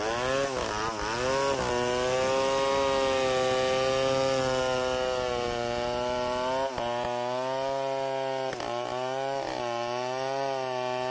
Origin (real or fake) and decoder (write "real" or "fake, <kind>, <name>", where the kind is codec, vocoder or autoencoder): real